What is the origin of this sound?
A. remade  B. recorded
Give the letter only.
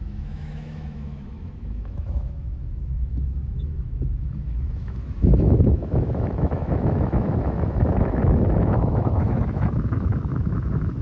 A